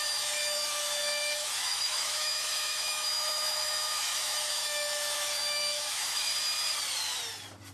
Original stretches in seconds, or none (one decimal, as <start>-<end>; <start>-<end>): 6.3-7.7